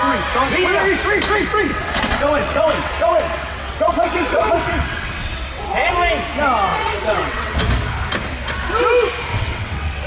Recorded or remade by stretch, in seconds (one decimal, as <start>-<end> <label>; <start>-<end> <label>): 0.0-1.7 recorded; 1.7-5.9 remade; 5.9-6.7 recorded; 6.7-7.6 remade; 7.6-9.3 recorded; 9.3-10.1 remade